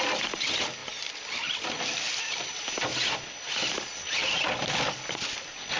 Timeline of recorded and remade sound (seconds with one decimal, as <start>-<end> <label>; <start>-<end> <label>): 0.0-2.9 recorded; 2.9-3.5 remade; 3.5-5.8 recorded